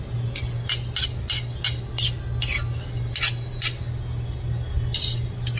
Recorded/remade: recorded